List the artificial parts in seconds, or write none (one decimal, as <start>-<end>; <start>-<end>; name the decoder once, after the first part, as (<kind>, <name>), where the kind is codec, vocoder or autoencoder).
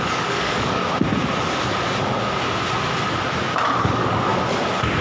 0.0-0.8 (codec, DAC); 3.8-4.3